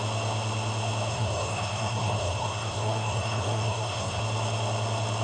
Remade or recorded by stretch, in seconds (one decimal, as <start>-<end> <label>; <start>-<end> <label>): 0.0-1.1 recorded; 1.1-4.2 remade; 4.2-5.2 recorded